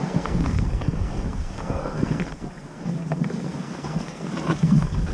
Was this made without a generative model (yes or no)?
no